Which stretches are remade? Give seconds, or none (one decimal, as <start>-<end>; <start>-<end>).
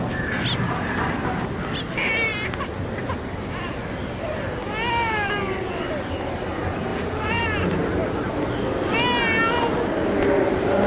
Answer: 6.9-7.4